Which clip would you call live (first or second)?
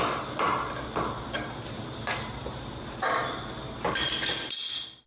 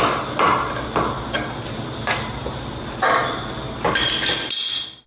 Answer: second